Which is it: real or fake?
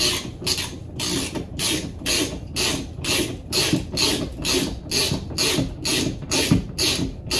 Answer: real